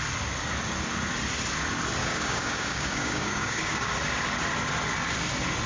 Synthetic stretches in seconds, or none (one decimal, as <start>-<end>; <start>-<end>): 2.0-3.9